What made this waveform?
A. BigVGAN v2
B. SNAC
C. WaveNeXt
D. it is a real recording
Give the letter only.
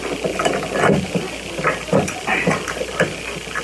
D